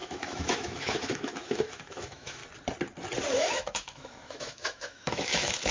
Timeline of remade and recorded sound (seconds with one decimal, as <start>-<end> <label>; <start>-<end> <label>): 0.0-2.4 remade; 2.4-3.4 recorded; 3.4-5.7 remade